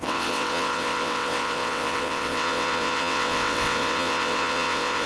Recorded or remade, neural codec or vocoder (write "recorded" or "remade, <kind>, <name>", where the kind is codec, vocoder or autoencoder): remade, vocoder, WaveNeXt